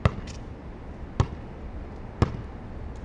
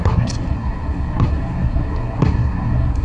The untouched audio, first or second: first